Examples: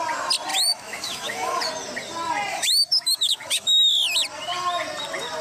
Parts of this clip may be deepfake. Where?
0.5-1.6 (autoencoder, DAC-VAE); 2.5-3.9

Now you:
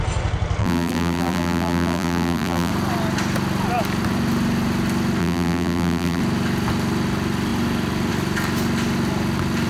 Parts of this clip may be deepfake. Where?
0.6-2.7 (vocoder, BigVGAN v2); 5.2-6.2

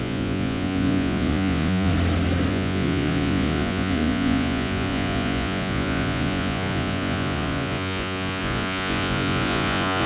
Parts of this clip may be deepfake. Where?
0.0-1.9 (vocoder, Vocos); 2.5-10.1

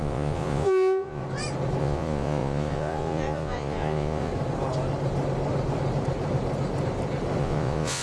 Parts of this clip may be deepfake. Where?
0.0-1.2 (vocoder, Vocos); 1.8-4.3; 7.4-8.0

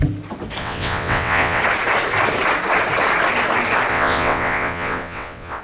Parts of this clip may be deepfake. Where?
0.6-1.6 (vocoder, WaveNeXt); 3.9-5.6

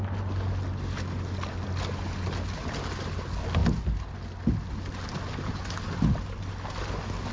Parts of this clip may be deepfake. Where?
none